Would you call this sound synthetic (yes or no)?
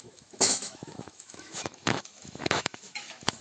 yes